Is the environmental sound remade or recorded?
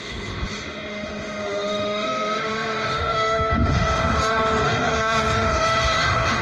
remade